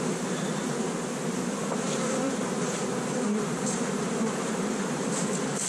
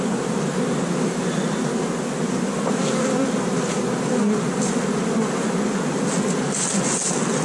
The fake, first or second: first